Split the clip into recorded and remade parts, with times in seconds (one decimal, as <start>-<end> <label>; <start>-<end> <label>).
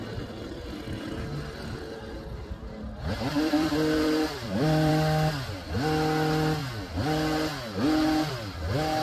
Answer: 0.0-3.3 recorded; 3.3-4.9 remade; 4.9-9.0 recorded